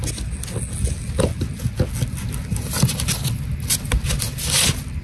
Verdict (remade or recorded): recorded